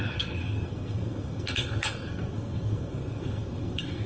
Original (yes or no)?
no